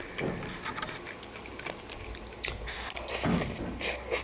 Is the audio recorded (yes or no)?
yes